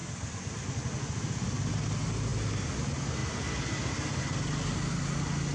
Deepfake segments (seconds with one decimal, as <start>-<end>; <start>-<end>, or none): none